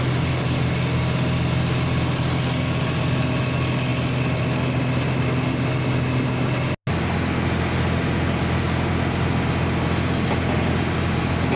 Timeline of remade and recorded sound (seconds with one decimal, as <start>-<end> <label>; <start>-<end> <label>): 0.0-11.6 recorded